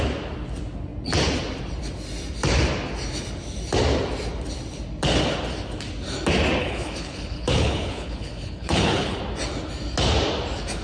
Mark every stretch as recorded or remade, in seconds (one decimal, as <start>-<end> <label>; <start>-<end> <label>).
0.0-6.6 recorded; 6.6-9.2 remade; 9.2-10.8 recorded